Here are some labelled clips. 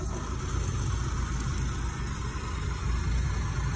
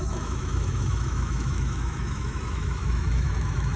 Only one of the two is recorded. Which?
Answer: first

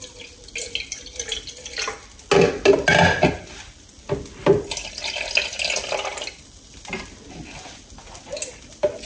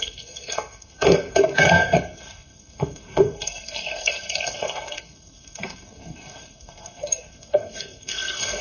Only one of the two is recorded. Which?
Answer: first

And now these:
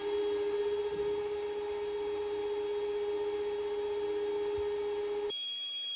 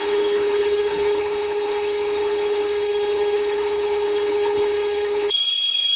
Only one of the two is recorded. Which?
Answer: first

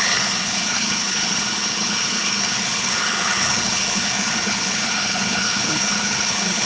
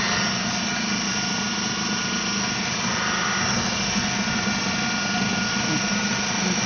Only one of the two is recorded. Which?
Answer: second